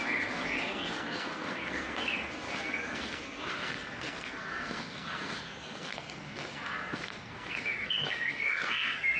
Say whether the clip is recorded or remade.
remade